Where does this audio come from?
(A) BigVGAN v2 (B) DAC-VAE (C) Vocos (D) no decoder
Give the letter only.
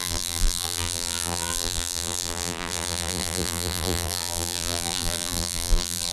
A